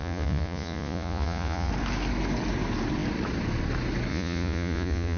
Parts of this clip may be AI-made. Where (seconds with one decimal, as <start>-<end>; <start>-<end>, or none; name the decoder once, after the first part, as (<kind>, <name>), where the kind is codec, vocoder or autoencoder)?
0.0-1.7 (vocoder, Vocos); 4.1-5.2

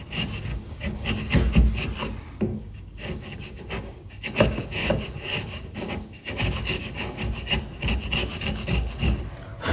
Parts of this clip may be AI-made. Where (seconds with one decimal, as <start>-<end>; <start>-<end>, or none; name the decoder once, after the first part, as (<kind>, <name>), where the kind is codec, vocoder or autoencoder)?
0.5-1.1 (codec, DAC); 2.5-7.6; 8.2-9.2

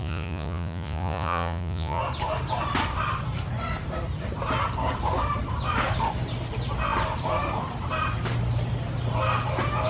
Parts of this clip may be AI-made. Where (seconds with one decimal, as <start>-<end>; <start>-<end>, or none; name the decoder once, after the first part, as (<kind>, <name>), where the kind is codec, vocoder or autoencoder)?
0.0-2.0 (vocoder, Vocos)

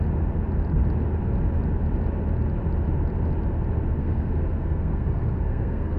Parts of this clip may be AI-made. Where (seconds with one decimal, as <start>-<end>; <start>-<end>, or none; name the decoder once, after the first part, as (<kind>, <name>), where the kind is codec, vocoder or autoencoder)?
4.0-6.0 (codec, SNAC)